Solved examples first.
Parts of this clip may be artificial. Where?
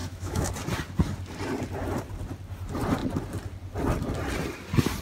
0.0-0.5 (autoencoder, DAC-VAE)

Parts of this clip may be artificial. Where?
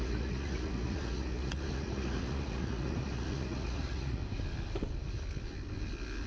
0.0-4.2 (vocoder, Vocos)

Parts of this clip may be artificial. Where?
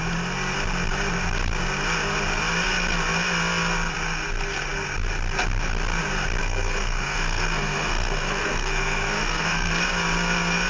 6.4-9.7 (codec, SNAC)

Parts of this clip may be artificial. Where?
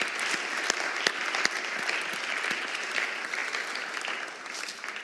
none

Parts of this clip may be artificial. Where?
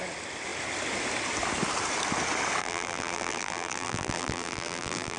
2.6-5.2 (vocoder, BigVGAN v2)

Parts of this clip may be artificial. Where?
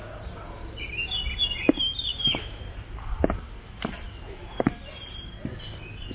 2.1-2.7 (autoencoder, DAC-VAE)